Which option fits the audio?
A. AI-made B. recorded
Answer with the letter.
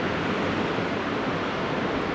B